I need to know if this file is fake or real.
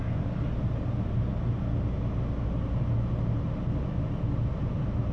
real